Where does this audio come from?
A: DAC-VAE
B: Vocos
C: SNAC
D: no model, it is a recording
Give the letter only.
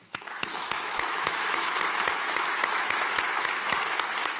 A